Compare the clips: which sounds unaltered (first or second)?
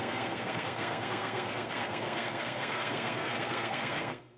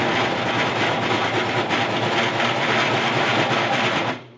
second